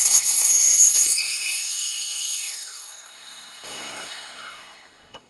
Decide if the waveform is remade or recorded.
remade